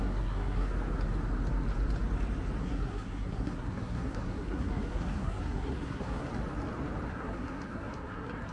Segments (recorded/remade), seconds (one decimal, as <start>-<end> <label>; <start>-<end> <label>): 0.0-0.7 remade; 0.7-2.6 recorded; 2.6-6.3 remade; 6.3-7.1 recorded; 7.1-8.5 remade

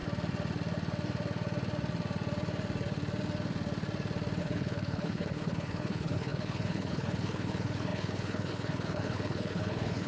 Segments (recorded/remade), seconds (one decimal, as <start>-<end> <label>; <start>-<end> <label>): 0.0-4.4 recorded; 4.4-10.1 remade

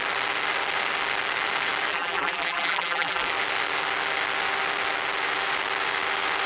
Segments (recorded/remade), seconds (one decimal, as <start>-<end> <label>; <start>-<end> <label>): 0.0-1.9 recorded; 1.9-3.3 remade; 3.3-6.5 recorded

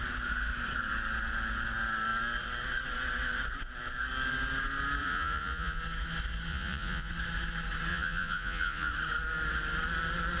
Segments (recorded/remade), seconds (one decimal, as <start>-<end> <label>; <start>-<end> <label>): 0.0-5.0 recorded; 5.0-5.8 remade; 5.8-6.5 recorded; 6.5-7.1 remade; 7.1-7.9 recorded; 7.9-8.9 remade; 8.9-10.4 recorded

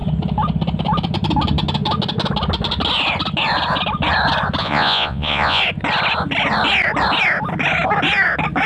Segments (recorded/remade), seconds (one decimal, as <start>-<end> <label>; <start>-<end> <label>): 0.0-4.6 recorded; 4.6-5.6 remade; 5.6-8.7 recorded